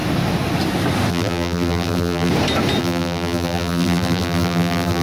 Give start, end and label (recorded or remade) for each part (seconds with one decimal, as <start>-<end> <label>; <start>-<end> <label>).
0.0-1.1 recorded; 1.1-2.3 remade; 2.3-2.8 recorded; 2.8-5.0 remade